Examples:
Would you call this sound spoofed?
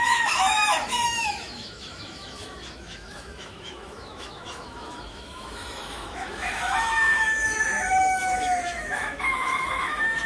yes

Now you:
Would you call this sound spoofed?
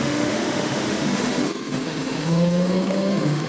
yes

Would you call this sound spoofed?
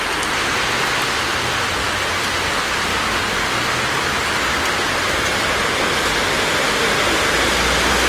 no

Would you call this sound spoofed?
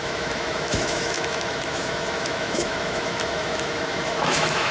yes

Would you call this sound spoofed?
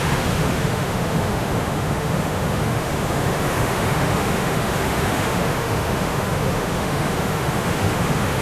yes